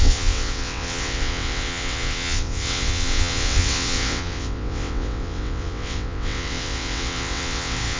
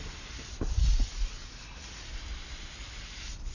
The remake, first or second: first